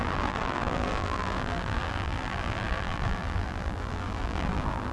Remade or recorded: remade